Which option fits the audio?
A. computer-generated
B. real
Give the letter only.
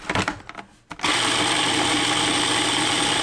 B